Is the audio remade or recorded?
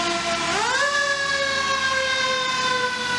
recorded